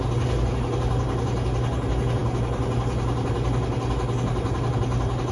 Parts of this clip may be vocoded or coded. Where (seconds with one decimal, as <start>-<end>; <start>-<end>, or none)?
none